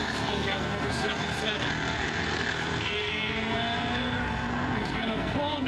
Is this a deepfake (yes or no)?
yes